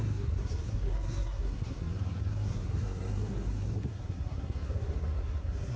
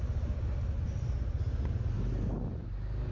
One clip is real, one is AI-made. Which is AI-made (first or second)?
first